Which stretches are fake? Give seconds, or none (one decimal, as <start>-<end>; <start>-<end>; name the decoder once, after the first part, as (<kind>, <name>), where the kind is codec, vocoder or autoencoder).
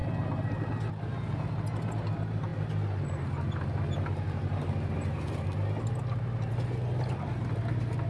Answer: none